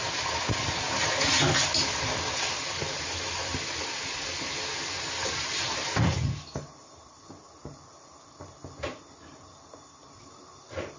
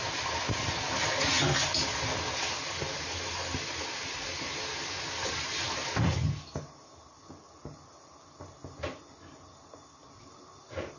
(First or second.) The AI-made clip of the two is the first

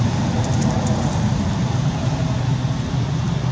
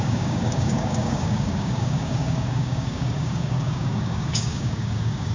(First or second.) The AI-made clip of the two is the second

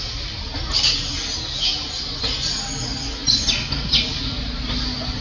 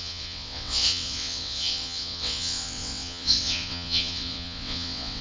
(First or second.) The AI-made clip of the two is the second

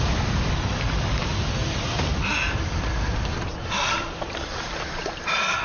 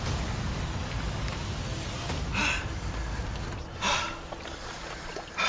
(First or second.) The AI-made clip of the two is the first